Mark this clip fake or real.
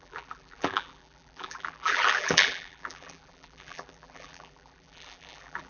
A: fake